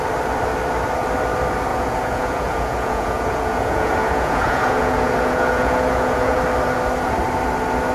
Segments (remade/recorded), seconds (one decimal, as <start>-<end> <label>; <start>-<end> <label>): 0.0-1.7 recorded; 1.7-6.4 remade; 6.4-7.9 recorded